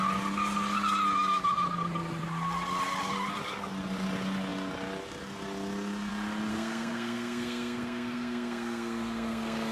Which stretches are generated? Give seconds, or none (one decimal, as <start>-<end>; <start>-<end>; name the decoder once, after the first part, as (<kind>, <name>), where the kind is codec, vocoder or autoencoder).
6.5-9.7 (codec, SNAC)